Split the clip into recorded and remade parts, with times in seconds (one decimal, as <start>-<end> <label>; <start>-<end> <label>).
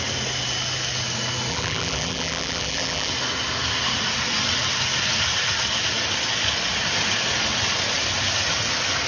0.0-1.5 recorded; 1.5-3.1 remade; 3.1-9.1 recorded